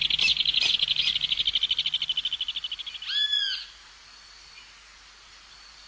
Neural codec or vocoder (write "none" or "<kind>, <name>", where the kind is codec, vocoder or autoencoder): none